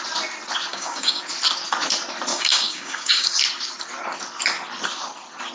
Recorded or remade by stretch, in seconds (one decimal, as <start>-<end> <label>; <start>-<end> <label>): 0.0-0.7 recorded; 0.7-1.2 remade; 1.2-2.3 recorded; 2.3-3.4 remade; 3.4-5.5 recorded